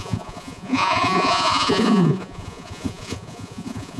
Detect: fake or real fake